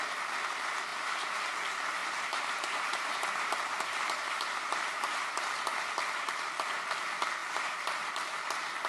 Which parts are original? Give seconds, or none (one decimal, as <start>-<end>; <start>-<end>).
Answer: 0.0-0.9; 1.4-2.0; 5.4-7.4; 8.1-8.9